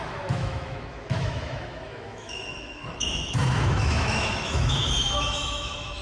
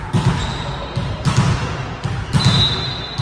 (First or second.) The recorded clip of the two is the second